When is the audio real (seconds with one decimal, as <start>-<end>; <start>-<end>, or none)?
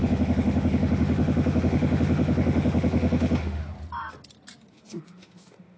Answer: 3.6-4.7